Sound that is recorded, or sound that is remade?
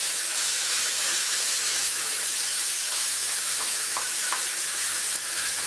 remade